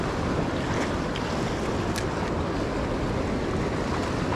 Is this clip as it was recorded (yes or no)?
yes